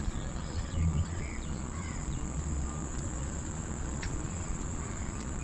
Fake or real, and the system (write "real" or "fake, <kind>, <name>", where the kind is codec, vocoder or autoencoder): fake, vocoder, Vocos